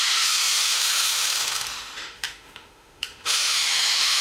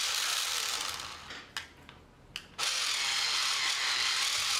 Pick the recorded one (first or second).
second